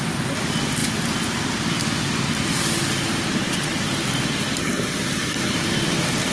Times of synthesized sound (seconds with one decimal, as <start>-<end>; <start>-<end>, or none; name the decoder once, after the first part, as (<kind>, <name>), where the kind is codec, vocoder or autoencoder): none